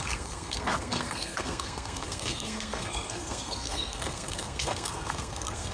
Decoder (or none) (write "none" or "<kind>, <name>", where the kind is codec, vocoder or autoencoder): codec, SNAC